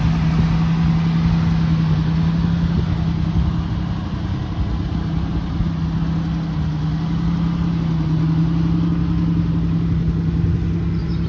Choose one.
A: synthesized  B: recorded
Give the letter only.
B